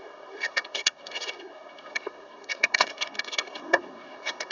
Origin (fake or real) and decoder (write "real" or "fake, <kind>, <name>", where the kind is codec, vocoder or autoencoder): fake, codec, SNAC